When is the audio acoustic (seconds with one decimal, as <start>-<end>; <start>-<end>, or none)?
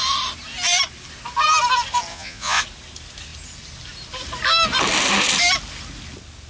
0.0-2.1; 2.6-6.5